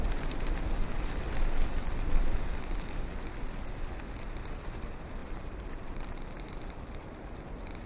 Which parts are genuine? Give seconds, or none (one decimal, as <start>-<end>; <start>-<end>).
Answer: 0.0-5.2; 7.3-7.9